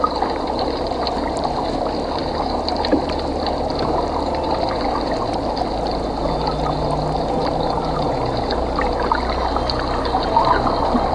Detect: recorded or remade recorded